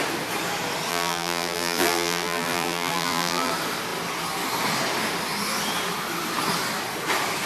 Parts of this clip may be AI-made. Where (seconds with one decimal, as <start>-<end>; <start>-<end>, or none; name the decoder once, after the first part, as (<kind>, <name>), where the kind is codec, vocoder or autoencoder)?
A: 0.9-3.5 (vocoder, BigVGAN v2)